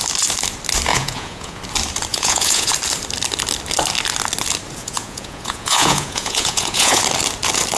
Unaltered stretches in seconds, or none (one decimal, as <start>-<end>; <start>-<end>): 0.0-0.9; 1.6-2.1; 2.7-4.8; 7.0-7.8